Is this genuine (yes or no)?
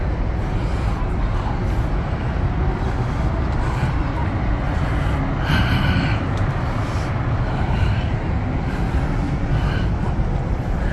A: yes